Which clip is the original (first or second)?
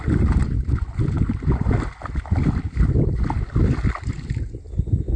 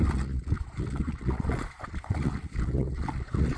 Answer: first